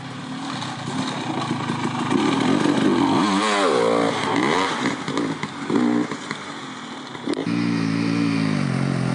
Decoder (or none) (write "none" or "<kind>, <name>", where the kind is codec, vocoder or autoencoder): none